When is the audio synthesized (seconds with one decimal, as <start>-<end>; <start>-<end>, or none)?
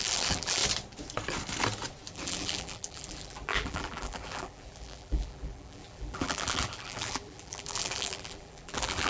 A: 0.0-0.6; 2.1-9.1